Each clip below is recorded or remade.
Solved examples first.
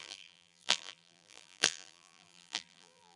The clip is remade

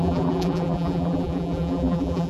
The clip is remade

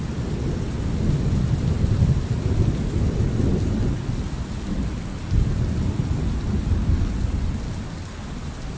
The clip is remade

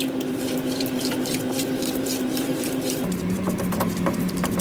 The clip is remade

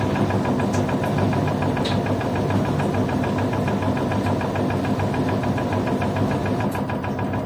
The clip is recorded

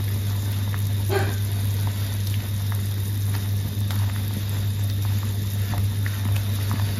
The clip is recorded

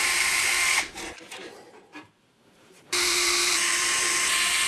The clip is remade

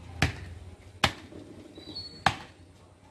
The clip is recorded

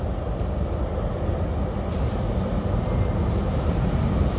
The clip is recorded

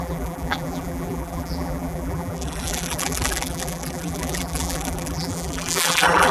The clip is remade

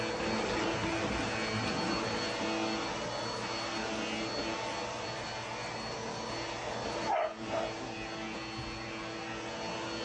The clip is recorded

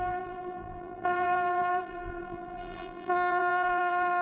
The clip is remade